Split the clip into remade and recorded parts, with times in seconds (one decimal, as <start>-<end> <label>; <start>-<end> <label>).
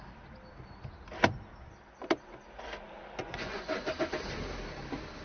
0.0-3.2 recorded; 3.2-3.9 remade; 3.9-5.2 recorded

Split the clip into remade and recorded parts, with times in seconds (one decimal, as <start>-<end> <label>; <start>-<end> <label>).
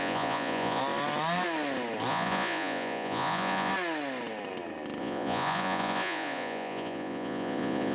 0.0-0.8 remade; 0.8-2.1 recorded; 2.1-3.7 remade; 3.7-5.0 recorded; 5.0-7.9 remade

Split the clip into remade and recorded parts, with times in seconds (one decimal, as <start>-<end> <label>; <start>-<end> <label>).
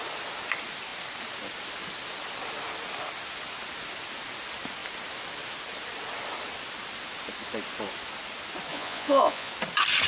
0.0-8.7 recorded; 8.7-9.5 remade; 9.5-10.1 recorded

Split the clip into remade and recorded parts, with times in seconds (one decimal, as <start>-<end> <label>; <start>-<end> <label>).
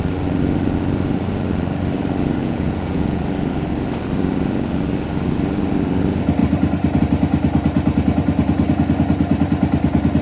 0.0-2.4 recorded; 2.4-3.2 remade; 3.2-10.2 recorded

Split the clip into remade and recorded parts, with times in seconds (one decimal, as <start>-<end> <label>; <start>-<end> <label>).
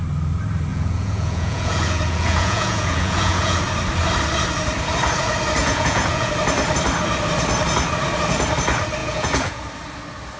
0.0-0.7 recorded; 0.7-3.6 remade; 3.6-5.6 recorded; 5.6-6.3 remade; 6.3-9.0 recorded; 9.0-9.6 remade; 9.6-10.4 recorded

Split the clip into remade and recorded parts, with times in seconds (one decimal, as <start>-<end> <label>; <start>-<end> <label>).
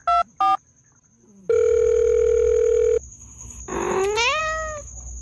0.0-5.2 recorded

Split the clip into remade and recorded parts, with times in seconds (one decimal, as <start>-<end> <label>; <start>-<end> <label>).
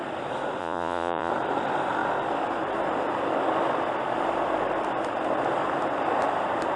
0.0-0.6 recorded; 0.6-1.3 remade; 1.3-6.8 recorded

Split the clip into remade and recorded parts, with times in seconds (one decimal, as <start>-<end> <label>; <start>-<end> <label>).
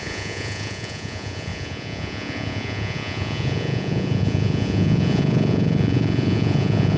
0.0-7.0 remade